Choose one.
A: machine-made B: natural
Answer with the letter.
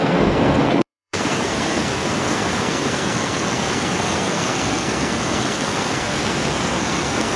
A